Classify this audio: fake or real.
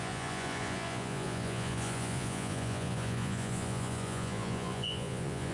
fake